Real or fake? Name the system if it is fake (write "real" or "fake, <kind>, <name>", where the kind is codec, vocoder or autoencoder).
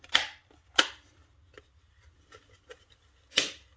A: real